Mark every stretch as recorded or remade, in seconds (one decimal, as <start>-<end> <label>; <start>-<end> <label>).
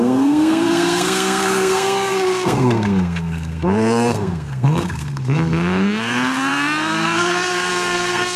0.0-8.4 remade